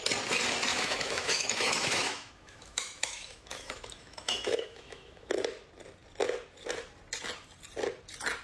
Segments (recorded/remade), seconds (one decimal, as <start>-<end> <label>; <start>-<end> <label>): 0.0-0.7 recorded; 0.7-5.3 remade; 5.3-8.4 recorded